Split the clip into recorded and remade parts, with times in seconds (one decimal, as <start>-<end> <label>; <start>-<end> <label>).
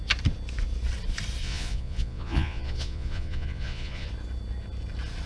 0.0-1.4 recorded; 1.4-4.1 remade; 4.1-5.3 recorded